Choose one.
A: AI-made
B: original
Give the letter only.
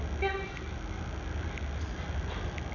B